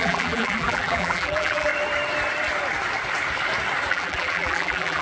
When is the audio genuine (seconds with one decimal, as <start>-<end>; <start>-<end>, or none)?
1.7-3.9